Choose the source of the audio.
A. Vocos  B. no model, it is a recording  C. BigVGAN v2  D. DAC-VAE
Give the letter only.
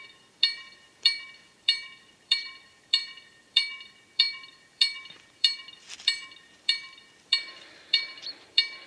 C